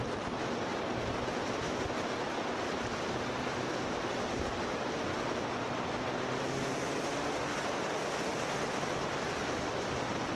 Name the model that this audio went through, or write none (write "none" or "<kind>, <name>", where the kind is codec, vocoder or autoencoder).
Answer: none